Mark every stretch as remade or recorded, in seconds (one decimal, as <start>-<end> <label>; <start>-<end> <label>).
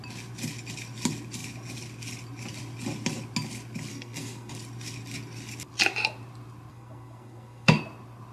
0.0-3.9 recorded; 3.9-4.5 remade; 4.5-6.7 recorded; 6.7-7.8 remade; 7.8-8.3 recorded